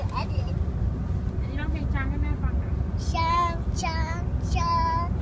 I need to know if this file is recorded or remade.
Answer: recorded